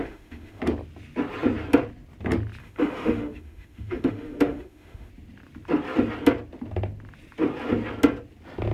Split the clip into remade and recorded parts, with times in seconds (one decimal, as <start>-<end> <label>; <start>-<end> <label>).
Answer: 0.0-0.6 remade; 0.6-2.6 recorded; 2.6-5.1 remade; 5.1-8.7 recorded